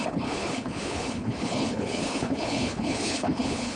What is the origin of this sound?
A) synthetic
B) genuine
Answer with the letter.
A